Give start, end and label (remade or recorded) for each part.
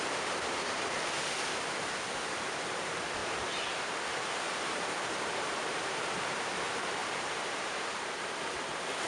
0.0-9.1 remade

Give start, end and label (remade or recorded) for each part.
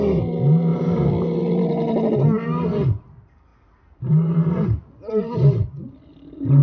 0.0-0.7 recorded; 0.7-1.7 remade; 1.7-3.5 recorded; 3.5-6.6 remade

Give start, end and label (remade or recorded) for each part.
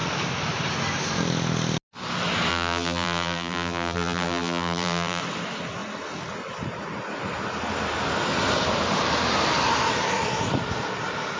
0.0-2.5 recorded; 2.5-5.2 remade; 5.2-11.4 recorded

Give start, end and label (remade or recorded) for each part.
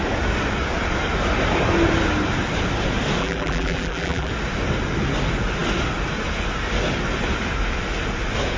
0.0-3.2 recorded; 3.2-4.3 remade; 4.3-8.6 recorded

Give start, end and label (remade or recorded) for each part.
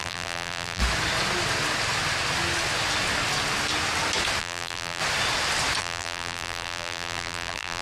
0.0-0.8 remade; 0.8-4.4 recorded; 4.4-5.0 remade; 5.0-5.8 recorded; 5.8-7.8 remade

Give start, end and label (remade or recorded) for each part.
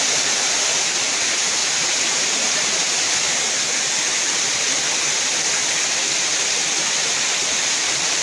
0.0-1.6 recorded; 1.6-3.0 remade; 3.0-8.2 recorded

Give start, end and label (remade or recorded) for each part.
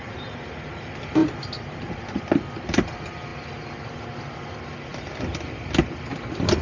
0.0-1.2 recorded; 1.2-2.6 remade; 2.6-4.9 recorded; 4.9-5.8 remade; 5.8-6.6 recorded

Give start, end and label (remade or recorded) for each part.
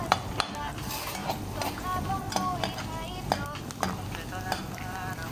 0.0-1.2 remade; 1.2-4.4 recorded; 4.4-5.3 remade